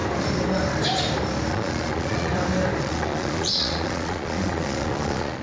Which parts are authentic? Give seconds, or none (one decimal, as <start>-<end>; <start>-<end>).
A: 0.0-1.5; 2.3-2.8